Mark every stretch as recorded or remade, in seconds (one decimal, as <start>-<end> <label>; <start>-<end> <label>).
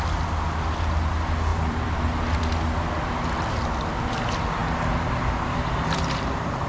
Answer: 0.0-1.5 recorded; 1.5-2.0 remade; 2.0-4.6 recorded; 4.6-6.7 remade